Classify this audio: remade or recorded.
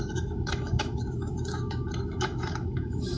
remade